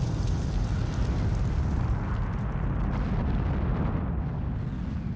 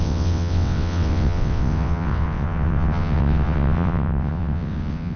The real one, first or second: first